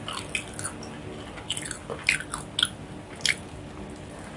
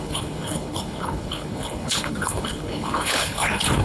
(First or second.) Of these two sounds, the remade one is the second